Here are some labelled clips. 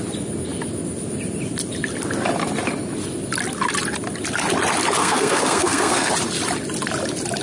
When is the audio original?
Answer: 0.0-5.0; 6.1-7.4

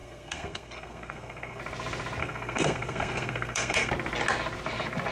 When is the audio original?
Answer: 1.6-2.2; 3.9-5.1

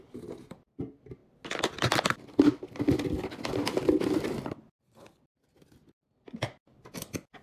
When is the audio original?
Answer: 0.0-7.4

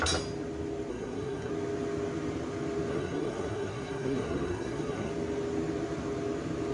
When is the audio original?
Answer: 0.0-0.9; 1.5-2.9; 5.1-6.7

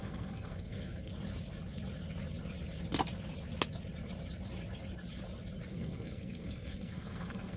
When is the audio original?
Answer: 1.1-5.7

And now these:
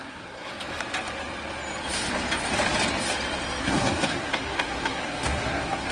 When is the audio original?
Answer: 0.5-3.6

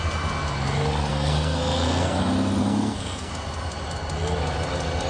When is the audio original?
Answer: 0.0-1.1; 2.2-2.6; 3.3-5.1

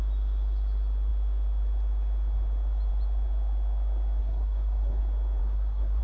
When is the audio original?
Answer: 0.0-4.2; 5.0-5.4